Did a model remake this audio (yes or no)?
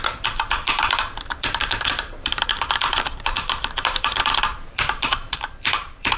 yes